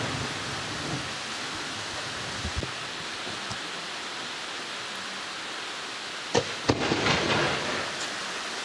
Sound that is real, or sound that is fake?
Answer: real